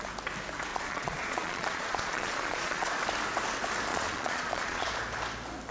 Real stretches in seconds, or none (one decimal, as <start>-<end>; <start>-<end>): 0.0-0.7; 2.9-3.9; 4.9-5.7